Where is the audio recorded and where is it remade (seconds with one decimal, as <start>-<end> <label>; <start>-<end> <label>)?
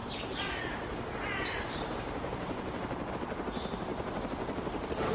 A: 0.0-3.1 remade; 3.1-3.9 recorded; 3.9-5.1 remade